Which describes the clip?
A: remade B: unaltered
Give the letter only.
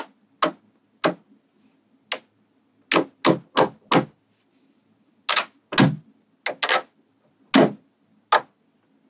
B